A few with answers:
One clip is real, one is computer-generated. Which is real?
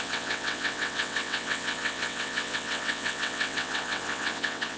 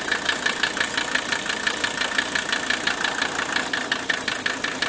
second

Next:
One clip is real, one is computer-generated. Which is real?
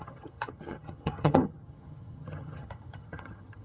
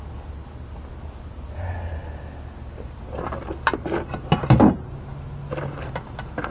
second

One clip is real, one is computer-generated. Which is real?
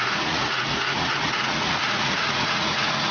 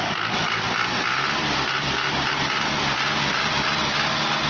second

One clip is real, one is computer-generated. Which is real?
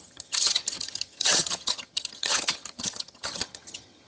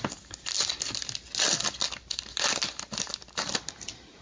second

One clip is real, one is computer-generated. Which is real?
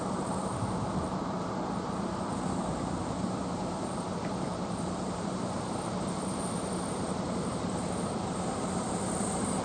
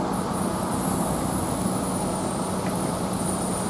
second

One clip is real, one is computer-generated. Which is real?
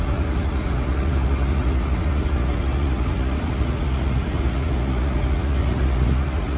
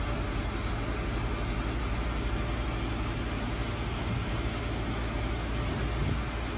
second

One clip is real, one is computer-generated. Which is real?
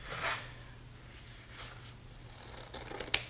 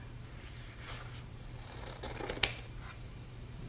first